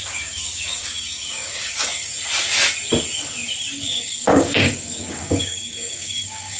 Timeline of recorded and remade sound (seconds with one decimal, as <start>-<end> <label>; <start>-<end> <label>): 0.0-2.1 remade; 2.1-3.7 recorded; 3.7-6.6 remade